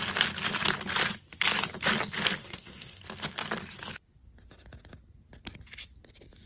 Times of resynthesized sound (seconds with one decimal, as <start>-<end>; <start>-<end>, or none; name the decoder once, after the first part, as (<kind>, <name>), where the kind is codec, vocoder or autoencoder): 2.4-3.0 (codec, SNAC)